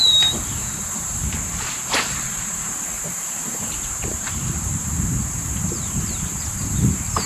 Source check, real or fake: fake